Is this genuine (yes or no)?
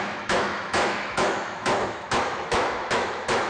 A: no